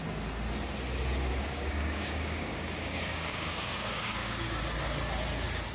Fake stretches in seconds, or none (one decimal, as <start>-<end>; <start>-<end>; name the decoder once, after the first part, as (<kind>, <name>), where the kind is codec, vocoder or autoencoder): 1.3-4.6 (codec, DAC)

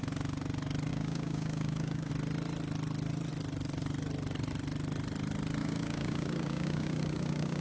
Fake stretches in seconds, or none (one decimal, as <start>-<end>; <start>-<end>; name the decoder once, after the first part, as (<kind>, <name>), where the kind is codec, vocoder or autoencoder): 0.9-2.1 (codec, DAC); 5.6-7.6

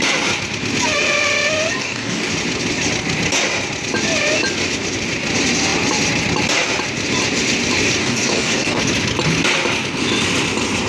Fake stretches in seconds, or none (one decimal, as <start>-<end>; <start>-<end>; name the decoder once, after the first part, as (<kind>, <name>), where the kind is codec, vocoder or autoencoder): 1.8-2.3 (codec, DAC); 8.0-8.8